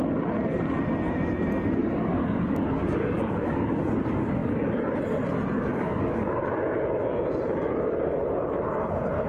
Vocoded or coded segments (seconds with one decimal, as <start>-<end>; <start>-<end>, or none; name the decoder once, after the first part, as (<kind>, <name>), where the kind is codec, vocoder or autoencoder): 1.8-3.9 (codec, DAC); 5.7-6.5